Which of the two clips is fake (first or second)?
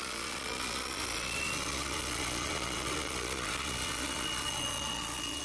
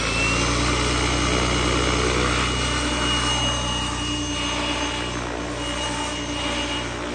first